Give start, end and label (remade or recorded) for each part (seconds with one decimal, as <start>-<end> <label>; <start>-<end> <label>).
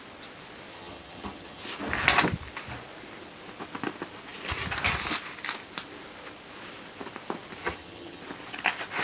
0.0-0.7 recorded; 0.7-1.6 remade; 1.6-7.6 recorded; 7.6-8.2 remade; 8.2-9.0 recorded